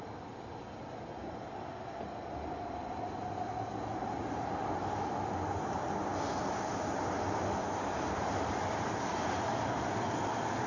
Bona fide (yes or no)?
yes